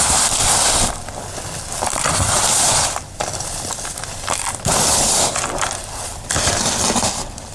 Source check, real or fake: fake